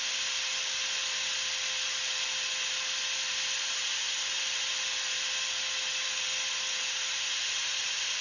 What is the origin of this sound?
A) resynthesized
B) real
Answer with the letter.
B